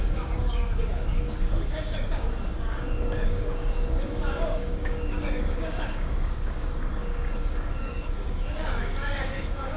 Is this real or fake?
fake